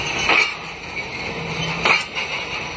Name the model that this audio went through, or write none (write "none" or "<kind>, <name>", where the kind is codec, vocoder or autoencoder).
none